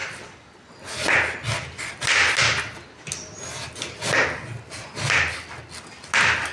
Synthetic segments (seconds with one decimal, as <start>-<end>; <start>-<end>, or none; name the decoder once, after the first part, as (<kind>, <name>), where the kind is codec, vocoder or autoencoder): none